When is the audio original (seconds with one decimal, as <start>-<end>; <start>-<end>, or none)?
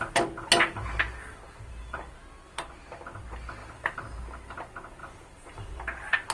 0.0-1.3; 2.0-3.6; 4.2-5.0; 5.8-6.3